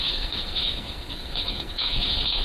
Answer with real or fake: fake